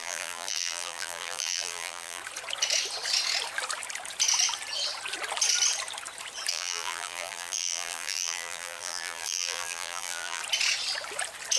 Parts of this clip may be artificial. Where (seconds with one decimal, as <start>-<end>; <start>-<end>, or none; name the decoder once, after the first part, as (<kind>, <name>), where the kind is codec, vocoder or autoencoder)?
0.0-2.2 (vocoder, BigVGAN v2); 6.5-10.4